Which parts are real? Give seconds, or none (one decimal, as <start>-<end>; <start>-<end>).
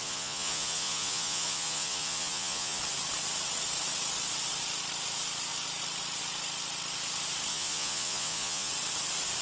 2.8-7.5; 8.7-9.4